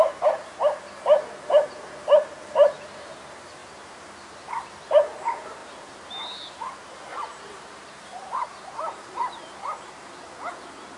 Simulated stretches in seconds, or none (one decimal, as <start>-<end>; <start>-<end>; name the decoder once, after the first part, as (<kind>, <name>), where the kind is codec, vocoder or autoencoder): none

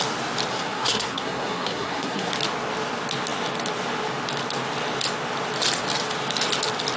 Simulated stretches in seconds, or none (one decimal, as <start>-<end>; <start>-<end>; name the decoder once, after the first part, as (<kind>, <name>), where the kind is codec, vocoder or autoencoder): 0.5-2.3 (codec, SNAC)

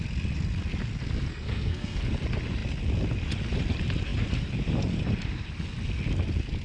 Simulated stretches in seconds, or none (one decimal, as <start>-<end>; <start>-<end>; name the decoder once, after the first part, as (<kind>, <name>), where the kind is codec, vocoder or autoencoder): 1.3-2.0 (codec, SNAC)

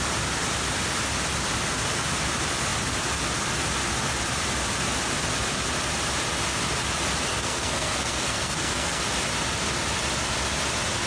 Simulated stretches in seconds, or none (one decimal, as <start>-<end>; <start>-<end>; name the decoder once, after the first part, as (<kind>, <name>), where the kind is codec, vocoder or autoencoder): 7.3-9.0 (codec, SNAC)

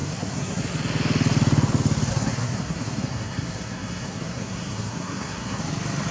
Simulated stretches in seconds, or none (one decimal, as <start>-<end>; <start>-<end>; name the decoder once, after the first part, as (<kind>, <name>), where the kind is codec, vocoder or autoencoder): 0.0-0.6 (codec, SNAC); 2.1-5.6

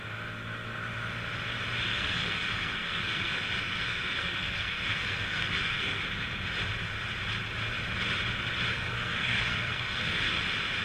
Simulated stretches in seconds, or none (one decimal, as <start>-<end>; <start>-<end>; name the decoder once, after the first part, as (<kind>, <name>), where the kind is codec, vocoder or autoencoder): 1.9-6.0 (codec, SNAC); 8.7-10.4

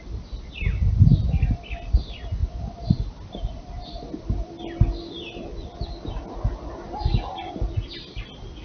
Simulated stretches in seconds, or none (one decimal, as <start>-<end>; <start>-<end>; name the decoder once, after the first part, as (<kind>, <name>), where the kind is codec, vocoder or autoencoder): none

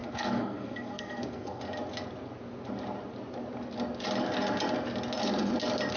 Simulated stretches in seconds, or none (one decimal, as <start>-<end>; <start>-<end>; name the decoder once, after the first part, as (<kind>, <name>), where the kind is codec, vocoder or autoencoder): 0.0-1.6 (codec, SNAC)